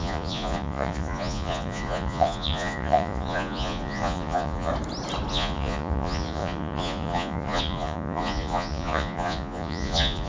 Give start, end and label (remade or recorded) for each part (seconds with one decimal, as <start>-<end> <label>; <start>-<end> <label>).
0.0-4.7 remade; 4.7-5.3 recorded; 5.3-10.3 remade